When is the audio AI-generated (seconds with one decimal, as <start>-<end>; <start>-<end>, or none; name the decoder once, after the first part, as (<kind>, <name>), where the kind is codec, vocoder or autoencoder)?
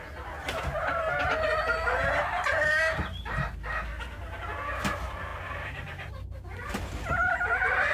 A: 5.3-6.1 (vocoder, BigVGAN v2)